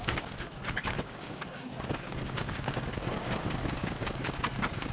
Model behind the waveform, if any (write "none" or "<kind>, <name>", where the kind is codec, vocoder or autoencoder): codec, DAC